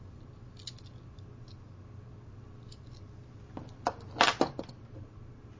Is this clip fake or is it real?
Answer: real